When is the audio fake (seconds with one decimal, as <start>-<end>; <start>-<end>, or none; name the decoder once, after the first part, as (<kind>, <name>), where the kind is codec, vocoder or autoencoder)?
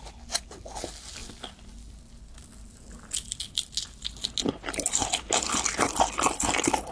none